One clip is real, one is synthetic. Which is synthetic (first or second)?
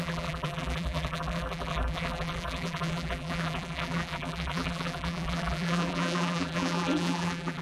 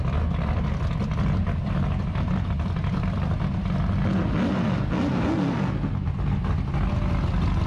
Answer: first